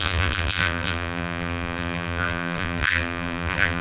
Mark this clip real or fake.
fake